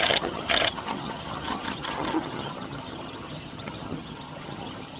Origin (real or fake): fake